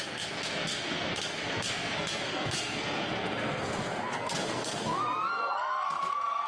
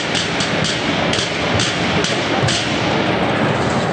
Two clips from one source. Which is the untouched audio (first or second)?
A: second